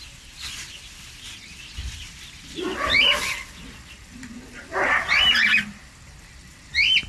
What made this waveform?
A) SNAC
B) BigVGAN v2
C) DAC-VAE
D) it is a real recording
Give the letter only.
D